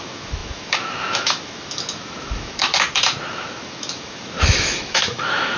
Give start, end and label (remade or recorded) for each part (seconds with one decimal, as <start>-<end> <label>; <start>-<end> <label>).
0.0-2.7 remade; 2.7-3.3 recorded; 3.3-5.6 remade